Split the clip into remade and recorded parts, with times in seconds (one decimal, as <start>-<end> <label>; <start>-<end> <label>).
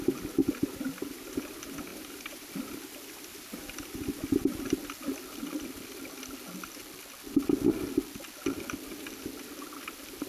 0.0-1.9 recorded; 1.9-2.5 remade; 2.5-10.3 recorded